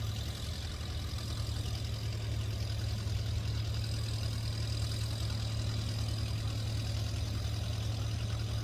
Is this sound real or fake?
real